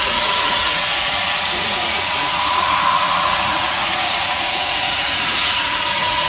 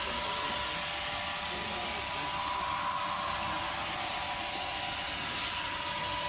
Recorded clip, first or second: second